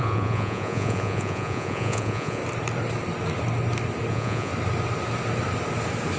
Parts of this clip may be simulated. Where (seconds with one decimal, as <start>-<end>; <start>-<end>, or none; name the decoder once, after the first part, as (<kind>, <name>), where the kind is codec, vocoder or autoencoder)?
0.0-2.4 (vocoder, Vocos); 4.1-4.5